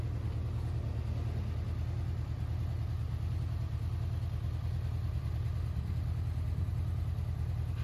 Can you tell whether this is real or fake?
real